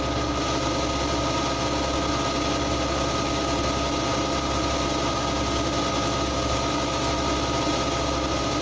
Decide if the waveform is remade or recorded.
recorded